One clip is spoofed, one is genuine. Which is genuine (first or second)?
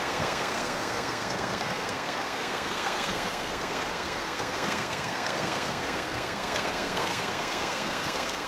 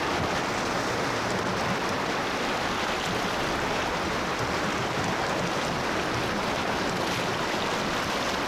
second